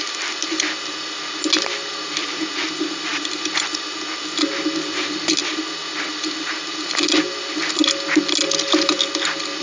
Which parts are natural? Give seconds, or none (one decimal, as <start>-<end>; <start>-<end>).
0.0-9.6